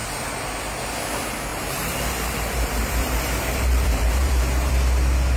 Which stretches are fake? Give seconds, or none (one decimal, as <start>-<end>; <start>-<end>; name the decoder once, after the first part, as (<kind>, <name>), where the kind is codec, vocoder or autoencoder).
1.5-4.7 (vocoder, BigVGAN v2)